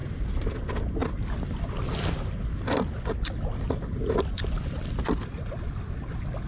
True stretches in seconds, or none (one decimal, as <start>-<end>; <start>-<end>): 0.5-6.5